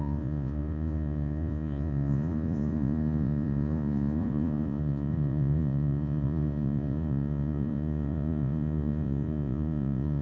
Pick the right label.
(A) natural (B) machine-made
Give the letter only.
B